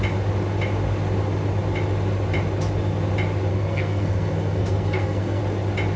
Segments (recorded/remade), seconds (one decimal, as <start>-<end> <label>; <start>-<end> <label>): 0.0-3.5 recorded; 3.5-5.4 remade; 5.4-6.0 recorded